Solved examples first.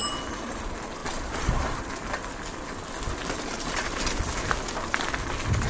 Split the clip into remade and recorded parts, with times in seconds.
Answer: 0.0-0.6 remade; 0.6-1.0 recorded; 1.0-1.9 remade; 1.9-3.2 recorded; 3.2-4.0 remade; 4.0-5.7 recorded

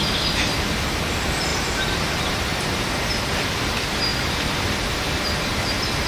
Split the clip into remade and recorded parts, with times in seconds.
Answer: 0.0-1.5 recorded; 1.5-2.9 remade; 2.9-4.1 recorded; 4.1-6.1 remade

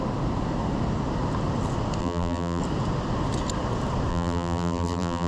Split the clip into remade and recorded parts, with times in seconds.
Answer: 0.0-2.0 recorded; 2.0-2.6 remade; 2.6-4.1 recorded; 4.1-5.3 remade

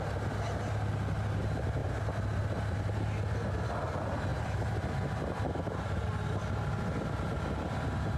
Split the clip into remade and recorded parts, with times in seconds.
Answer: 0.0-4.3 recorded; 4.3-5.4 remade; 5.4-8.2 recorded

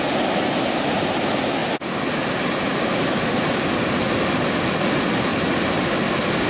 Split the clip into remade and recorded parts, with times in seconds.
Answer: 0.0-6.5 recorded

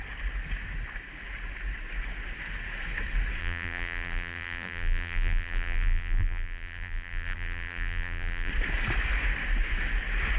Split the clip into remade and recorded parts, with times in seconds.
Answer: 0.0-3.4 recorded; 3.4-8.5 remade; 8.5-10.4 recorded

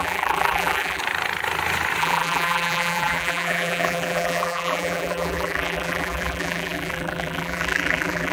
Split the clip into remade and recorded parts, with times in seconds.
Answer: 0.0-1.0 remade; 1.0-2.0 recorded; 2.0-8.3 remade

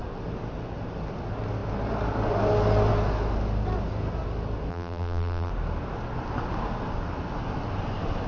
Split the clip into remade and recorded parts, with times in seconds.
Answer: 0.0-4.7 recorded; 4.7-5.5 remade; 5.5-8.3 recorded